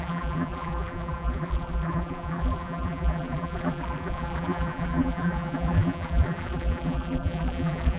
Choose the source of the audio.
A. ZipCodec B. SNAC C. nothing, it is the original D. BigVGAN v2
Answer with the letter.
D